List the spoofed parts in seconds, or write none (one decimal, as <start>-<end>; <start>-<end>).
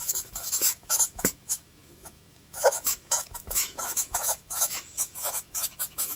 0.0-6.2